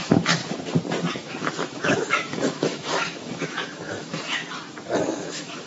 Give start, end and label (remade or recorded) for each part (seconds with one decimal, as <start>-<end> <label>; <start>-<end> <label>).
0.0-0.4 remade; 0.4-1.1 recorded; 1.1-4.4 remade; 4.4-5.1 recorded; 5.1-5.7 remade